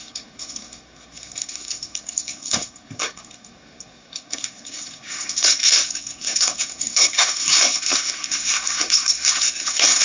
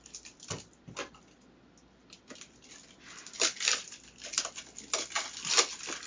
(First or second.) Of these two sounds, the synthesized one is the first